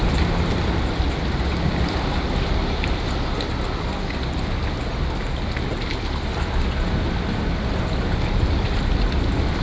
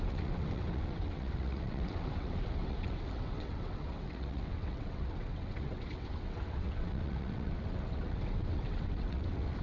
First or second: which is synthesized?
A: second